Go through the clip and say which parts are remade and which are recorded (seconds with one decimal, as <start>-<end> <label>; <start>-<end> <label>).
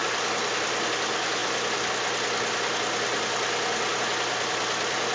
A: 0.0-5.1 recorded